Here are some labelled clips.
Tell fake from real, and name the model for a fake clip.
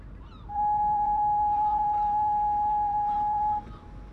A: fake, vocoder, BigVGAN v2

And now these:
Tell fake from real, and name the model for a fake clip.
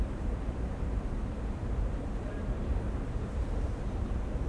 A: fake, vocoder, BigVGAN v2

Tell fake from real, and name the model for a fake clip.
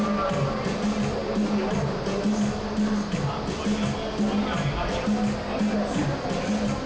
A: real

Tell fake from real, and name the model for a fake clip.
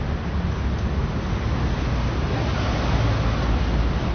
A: real